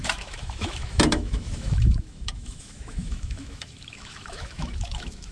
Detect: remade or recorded remade